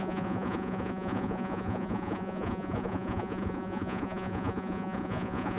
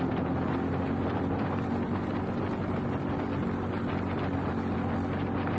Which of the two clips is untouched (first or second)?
second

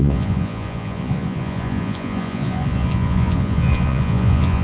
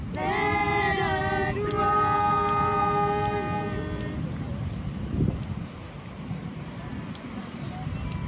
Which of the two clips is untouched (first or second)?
second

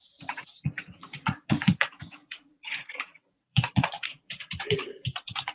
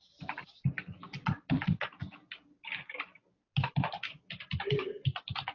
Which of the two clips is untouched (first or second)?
second